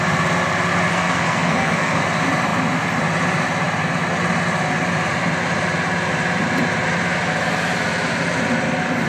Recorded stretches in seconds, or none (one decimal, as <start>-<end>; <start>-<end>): 0.0-0.9; 2.0-9.1